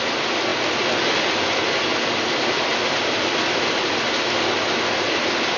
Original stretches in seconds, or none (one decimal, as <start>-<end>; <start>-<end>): 0.0-5.6